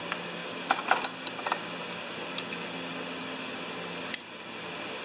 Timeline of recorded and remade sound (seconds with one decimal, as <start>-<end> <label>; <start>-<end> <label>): 0.0-5.0 recorded